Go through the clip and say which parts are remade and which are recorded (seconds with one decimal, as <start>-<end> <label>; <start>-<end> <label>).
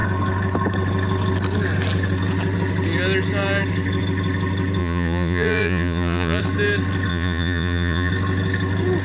0.0-4.8 recorded; 4.8-6.4 remade; 6.4-7.1 recorded; 7.1-8.1 remade; 8.1-9.0 recorded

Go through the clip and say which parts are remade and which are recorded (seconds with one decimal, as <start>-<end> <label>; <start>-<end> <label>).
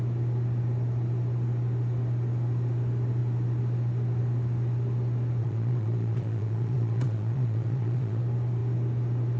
0.0-5.4 recorded; 5.4-8.2 remade; 8.2-9.4 recorded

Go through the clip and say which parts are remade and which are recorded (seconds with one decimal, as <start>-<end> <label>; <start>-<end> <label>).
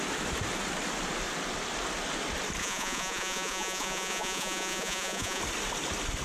0.0-2.6 recorded; 2.6-5.4 remade; 5.4-6.2 recorded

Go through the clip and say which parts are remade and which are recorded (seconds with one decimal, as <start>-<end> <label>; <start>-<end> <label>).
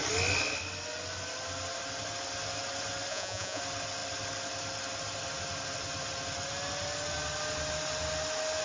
0.0-3.1 recorded; 3.1-3.6 remade; 3.6-8.6 recorded